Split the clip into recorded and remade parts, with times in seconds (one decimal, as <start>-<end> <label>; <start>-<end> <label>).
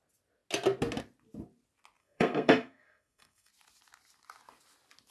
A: 0.0-2.0 recorded; 2.0-3.5 remade; 3.5-5.1 recorded